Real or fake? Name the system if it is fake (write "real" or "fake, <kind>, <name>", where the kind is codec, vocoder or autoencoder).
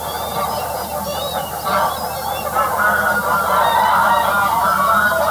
real